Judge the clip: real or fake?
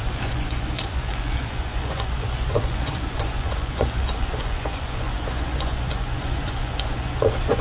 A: fake